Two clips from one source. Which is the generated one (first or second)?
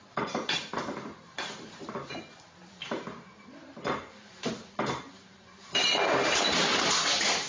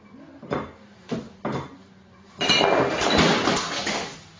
first